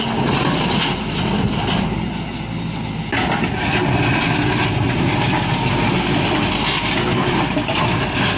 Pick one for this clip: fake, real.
real